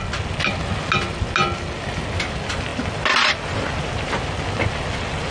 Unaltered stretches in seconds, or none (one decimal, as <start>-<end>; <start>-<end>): 0.0-5.3